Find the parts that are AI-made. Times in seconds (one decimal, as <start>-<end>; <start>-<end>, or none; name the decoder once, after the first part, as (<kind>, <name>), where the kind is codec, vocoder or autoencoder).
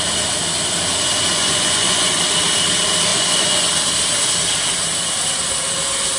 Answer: 1.3-2.2 (vocoder, Vocos); 3.1-3.7